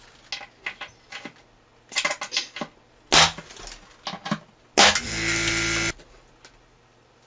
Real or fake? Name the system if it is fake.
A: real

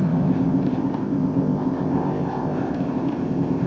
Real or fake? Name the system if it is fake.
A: fake, codec, ZipCodec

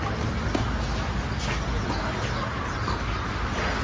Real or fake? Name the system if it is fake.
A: real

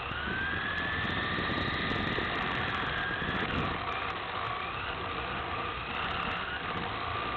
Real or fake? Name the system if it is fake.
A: real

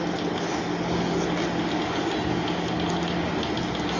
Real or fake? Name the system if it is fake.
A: real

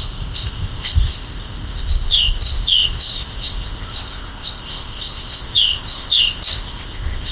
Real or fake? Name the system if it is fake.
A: fake, codec, ZipCodec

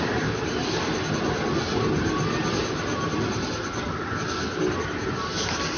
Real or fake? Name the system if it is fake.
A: real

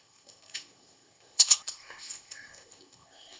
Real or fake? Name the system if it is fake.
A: fake, codec, ZipCodec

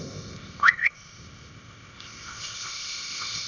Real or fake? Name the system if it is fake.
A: fake, codec, ZipCodec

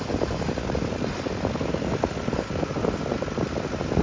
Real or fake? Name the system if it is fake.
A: real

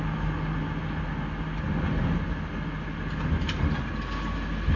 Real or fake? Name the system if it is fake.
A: real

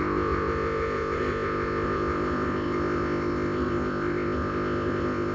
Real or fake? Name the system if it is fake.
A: fake, codec, ZipCodec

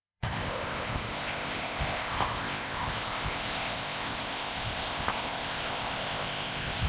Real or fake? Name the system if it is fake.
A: fake, codec, ZipCodec